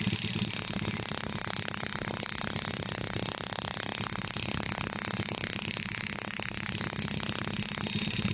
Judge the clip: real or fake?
real